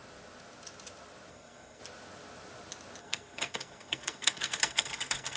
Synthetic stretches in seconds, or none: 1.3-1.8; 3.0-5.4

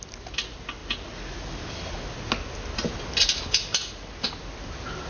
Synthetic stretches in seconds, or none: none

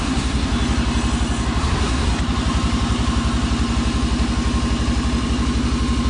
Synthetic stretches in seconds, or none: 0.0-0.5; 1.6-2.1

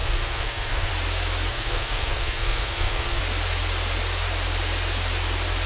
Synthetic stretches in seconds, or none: 0.0-0.9; 1.5-3.2